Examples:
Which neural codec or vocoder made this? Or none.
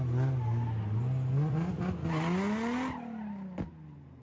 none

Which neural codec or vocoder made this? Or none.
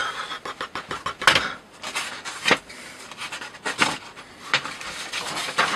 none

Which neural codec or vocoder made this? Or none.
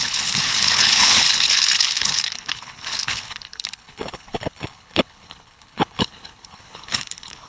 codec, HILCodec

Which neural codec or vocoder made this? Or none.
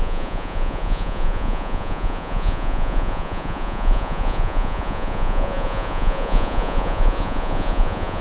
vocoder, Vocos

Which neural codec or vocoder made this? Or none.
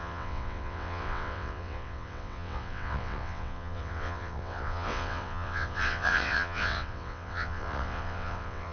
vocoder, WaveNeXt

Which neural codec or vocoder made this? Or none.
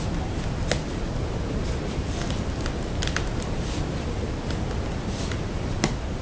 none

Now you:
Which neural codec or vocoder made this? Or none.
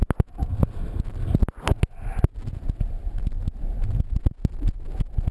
none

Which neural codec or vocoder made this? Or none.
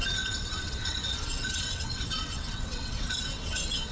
vocoder, WaveNeXt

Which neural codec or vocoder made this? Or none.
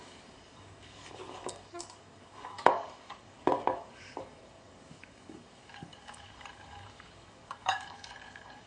codec, DAC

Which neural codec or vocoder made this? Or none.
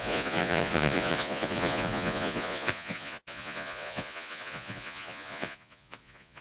vocoder, Vocos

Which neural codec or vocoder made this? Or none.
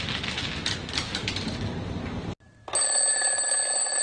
none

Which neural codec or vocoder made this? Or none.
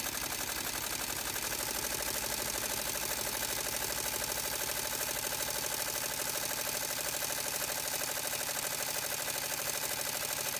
none